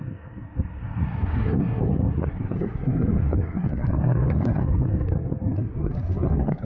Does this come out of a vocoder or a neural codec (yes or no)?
yes